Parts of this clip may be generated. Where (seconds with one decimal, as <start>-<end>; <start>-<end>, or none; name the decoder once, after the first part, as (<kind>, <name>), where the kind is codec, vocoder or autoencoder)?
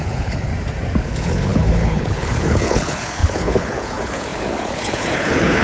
0.0-0.5 (codec, HILCodec); 1.0-5.6